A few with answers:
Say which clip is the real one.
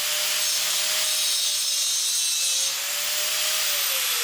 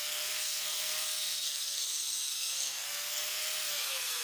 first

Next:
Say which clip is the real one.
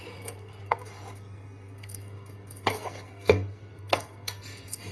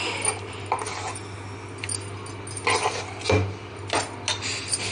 second